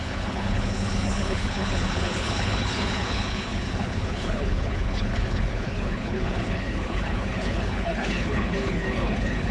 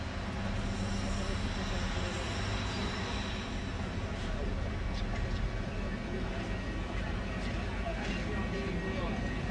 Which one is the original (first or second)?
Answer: second